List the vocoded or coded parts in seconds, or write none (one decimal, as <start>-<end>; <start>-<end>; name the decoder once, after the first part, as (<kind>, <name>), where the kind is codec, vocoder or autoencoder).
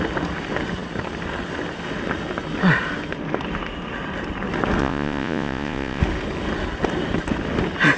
4.8-6.0 (vocoder, Vocos)